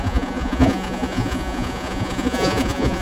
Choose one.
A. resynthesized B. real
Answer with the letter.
A